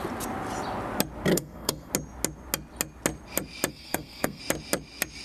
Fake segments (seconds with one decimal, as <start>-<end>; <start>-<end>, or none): 1.3-1.9; 3.7-4.4